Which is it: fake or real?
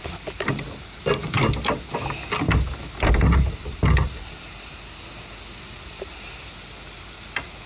real